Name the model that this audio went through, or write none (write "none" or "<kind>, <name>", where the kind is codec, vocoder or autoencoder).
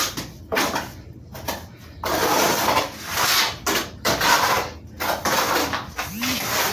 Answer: none